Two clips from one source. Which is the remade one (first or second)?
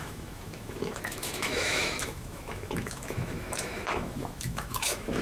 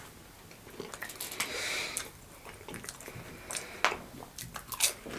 first